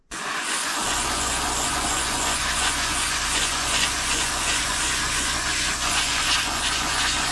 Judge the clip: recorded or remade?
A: remade